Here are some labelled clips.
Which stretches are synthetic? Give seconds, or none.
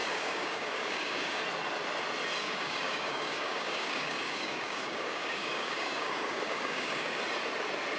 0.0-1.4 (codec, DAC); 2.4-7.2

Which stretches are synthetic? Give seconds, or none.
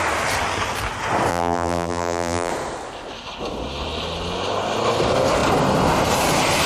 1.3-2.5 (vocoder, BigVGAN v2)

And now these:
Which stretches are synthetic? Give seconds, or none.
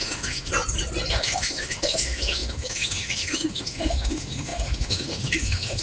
0.0-0.5 (autoencoder, DAC-VAE); 1.1-5.8